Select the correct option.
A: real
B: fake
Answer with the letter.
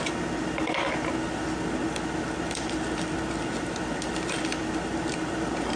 B